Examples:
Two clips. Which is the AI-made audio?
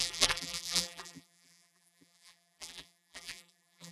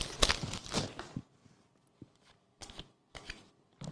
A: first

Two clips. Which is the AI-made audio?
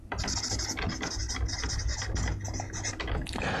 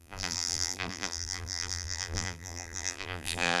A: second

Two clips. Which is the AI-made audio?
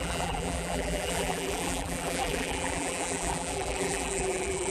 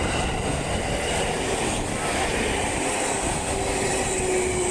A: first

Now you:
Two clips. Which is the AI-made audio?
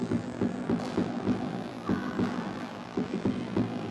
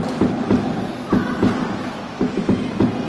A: first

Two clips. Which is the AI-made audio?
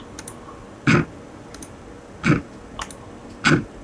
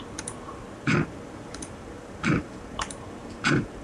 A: second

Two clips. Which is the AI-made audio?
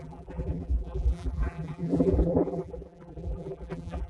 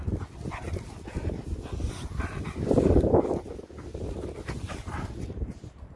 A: first